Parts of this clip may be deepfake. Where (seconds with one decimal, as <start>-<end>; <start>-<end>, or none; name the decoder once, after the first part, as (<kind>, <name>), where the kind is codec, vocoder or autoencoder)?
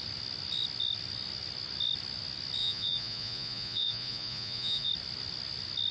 2.6-4.9 (vocoder, Vocos)